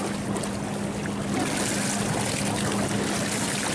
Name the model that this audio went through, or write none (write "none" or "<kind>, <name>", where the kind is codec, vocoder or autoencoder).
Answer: none